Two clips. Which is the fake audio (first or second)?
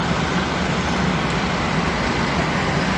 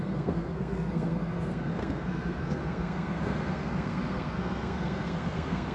second